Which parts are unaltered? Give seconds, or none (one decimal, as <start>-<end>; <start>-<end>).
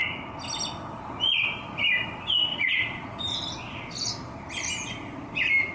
0.0-2.5; 3.2-5.7